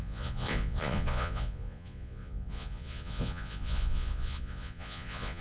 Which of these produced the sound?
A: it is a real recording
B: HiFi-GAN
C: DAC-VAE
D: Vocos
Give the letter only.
D